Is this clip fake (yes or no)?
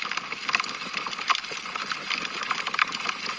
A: no